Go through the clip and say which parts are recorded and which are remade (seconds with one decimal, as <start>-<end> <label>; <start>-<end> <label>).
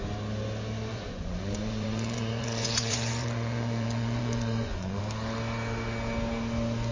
0.0-0.9 recorded; 0.9-5.0 remade; 5.0-6.9 recorded